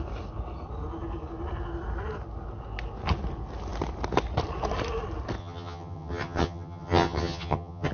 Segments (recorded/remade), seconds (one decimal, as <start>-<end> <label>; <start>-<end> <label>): 0.0-5.4 recorded; 5.4-7.9 remade